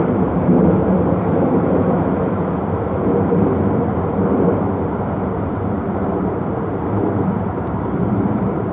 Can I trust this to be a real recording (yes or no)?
no